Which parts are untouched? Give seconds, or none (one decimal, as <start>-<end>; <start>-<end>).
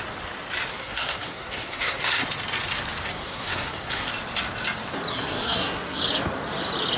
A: 0.0-0.7; 2.2-3.1; 4.1-5.1; 6.0-7.0